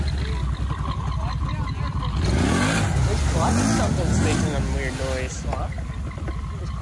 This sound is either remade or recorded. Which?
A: recorded